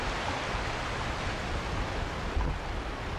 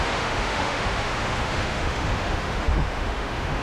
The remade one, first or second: second